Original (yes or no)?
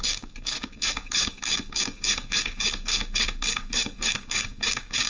no